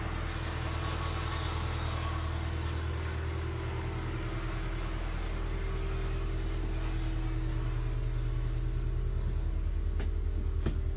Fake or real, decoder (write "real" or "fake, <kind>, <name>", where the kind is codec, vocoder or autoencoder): real